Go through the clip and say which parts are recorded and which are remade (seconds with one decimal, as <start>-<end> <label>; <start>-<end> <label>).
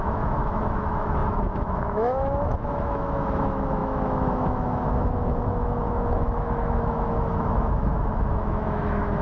0.0-9.2 remade